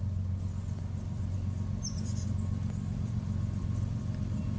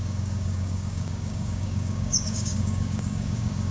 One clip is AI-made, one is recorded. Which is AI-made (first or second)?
second